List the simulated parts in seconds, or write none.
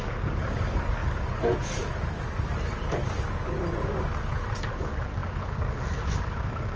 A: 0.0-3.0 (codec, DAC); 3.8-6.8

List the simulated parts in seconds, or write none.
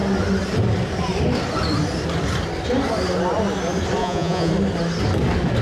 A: 4.0-4.5 (vocoder, Vocos)